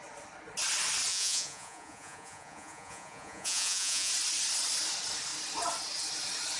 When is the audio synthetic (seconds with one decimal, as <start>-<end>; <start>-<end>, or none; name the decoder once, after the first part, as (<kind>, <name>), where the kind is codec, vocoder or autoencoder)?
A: 1.1-4.1 (vocoder, Vocos)